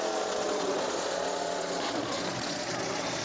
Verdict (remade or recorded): remade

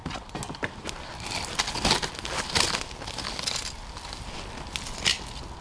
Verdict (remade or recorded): recorded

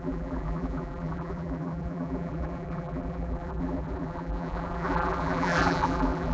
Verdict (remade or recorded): remade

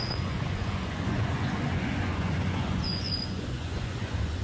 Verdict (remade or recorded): remade